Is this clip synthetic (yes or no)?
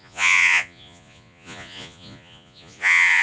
yes